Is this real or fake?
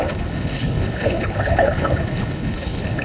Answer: fake